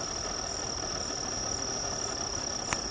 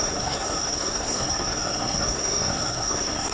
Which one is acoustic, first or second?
first